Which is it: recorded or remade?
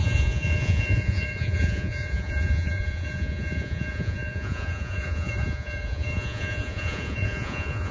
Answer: remade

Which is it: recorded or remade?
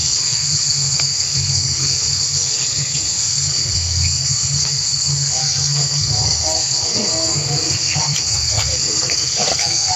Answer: remade